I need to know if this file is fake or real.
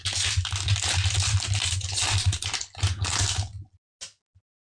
real